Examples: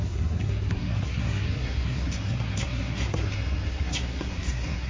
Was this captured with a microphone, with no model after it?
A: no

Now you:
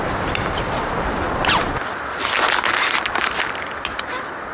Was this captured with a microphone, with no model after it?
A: no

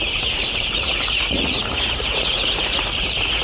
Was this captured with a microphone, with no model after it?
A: no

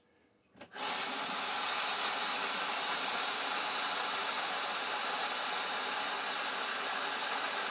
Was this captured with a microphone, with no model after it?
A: yes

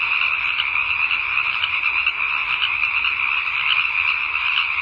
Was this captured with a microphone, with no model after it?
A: no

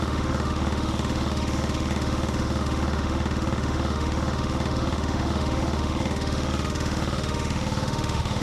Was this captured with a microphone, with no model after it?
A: no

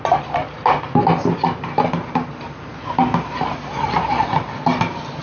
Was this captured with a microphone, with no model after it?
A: yes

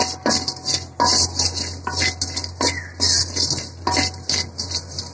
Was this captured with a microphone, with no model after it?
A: yes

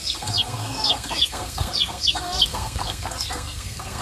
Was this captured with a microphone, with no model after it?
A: no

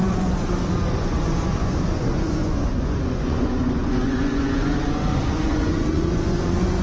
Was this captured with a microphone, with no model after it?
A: no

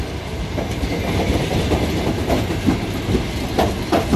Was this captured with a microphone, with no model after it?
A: yes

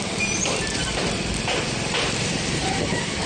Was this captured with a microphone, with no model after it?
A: no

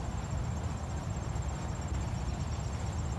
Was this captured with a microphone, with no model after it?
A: yes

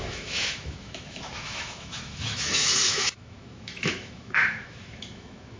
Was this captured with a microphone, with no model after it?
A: no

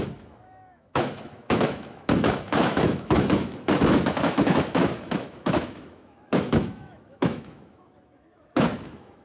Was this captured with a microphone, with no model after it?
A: no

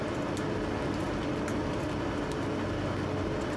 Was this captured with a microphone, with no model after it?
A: yes